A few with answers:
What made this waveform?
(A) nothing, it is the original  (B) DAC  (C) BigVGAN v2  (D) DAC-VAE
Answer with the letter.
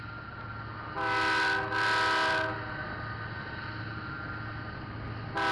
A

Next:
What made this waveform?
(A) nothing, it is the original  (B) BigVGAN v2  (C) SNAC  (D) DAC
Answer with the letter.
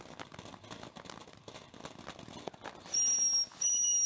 A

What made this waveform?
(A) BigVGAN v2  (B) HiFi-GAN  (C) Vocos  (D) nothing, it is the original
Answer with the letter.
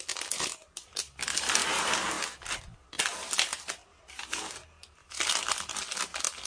D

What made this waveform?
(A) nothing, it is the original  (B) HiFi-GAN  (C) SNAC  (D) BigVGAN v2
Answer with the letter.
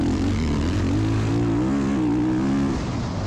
A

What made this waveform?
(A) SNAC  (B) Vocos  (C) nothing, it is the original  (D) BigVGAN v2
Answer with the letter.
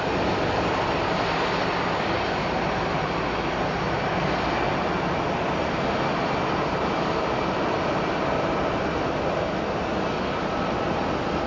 C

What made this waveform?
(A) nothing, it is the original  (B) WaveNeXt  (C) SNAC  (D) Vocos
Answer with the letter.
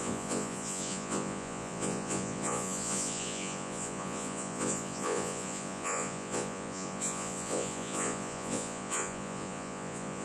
D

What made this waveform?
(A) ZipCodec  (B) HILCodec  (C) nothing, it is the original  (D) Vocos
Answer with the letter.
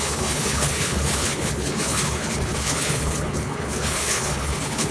B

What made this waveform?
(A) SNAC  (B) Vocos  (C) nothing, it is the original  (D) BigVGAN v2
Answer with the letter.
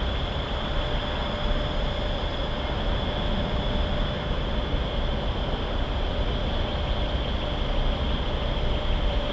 C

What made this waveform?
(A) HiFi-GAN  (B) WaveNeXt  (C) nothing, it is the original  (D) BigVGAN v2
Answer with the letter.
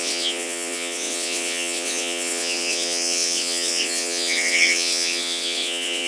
B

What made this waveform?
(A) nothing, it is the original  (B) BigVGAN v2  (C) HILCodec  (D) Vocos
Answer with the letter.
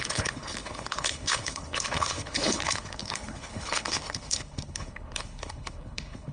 C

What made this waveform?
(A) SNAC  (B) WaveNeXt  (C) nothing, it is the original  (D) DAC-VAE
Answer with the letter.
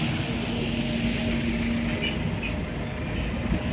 C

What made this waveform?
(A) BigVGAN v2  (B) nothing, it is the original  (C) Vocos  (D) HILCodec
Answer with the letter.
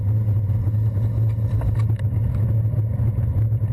B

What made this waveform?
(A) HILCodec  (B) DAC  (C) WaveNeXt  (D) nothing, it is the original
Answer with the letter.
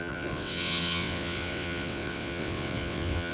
C